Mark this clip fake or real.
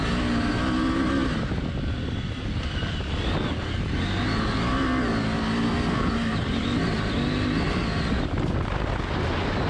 real